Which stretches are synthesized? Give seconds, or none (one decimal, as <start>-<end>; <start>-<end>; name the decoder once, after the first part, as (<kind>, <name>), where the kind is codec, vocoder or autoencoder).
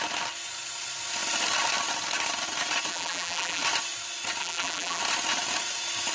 2.9-3.6 (vocoder, BigVGAN v2); 4.4-5.0